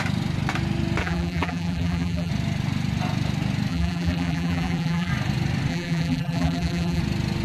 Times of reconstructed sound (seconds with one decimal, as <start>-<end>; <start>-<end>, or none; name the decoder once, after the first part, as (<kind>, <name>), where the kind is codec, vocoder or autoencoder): 1.0-2.3 (vocoder, BigVGAN v2); 3.7-5.1; 5.7-7.0